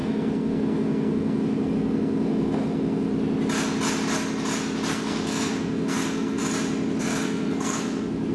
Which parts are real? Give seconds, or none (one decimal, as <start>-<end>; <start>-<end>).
3.1-4.9; 6.4-7.0